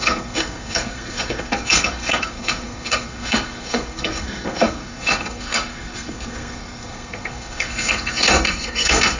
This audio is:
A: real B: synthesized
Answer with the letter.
B